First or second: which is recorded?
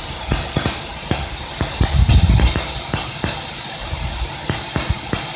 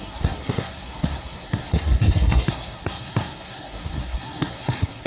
first